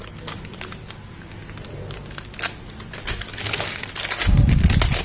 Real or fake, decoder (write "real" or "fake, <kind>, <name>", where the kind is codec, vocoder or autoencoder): real